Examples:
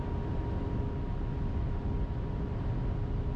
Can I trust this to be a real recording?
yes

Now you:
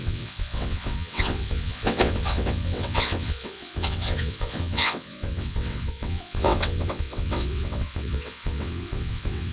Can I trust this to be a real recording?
no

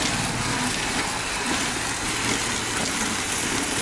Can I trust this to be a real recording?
yes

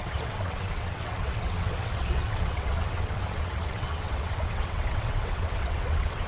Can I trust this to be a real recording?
no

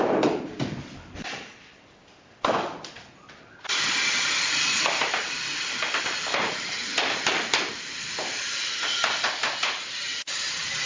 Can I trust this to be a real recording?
yes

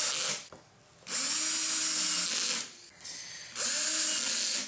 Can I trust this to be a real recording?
yes